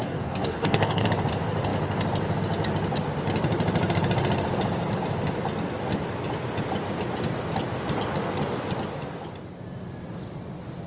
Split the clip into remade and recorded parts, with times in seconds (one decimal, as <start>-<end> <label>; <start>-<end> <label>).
0.0-1.1 remade; 1.1-10.9 recorded